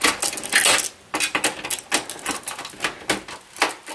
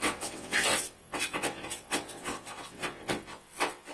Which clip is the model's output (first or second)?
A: second